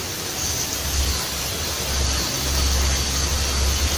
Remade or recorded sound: recorded